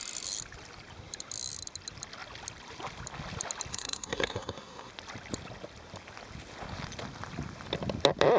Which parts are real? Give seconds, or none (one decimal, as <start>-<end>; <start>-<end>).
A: 0.0-3.7; 4.9-8.4